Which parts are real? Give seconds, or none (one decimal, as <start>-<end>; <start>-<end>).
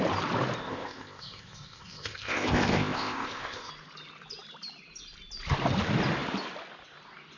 0.0-0.6; 3.7-7.4